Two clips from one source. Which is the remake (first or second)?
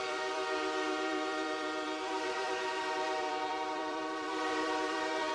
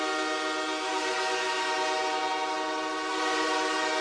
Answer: first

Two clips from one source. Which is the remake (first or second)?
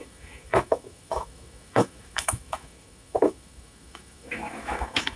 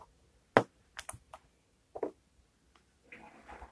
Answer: first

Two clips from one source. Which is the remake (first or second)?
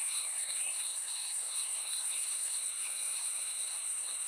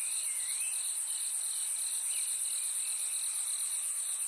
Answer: first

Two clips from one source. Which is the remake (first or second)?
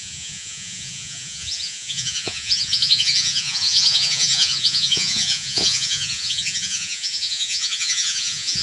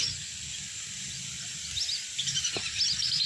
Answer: first